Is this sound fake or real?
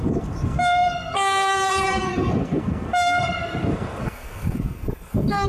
fake